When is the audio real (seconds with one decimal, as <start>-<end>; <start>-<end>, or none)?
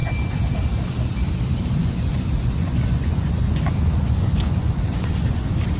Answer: 0.0-1.8; 5.3-5.8